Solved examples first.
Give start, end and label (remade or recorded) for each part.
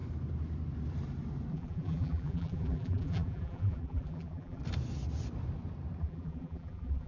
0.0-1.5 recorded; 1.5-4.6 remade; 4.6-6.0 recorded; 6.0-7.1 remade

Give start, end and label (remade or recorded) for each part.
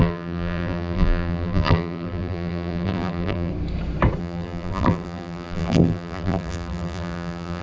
0.0-3.5 remade; 3.5-4.2 recorded; 4.2-7.6 remade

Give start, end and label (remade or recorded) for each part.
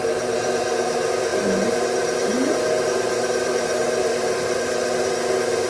0.0-1.3 recorded; 1.3-4.7 remade; 4.7-5.7 recorded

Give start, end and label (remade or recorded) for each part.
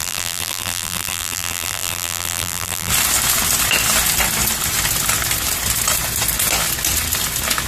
0.0-2.9 remade; 2.9-7.7 recorded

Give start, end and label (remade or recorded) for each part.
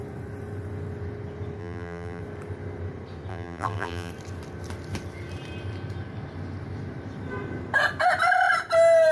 0.0-1.6 recorded; 1.6-2.2 remade; 2.2-3.3 recorded; 3.3-4.1 remade; 4.1-9.1 recorded